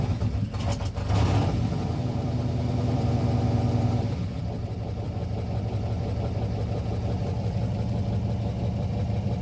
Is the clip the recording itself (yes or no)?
no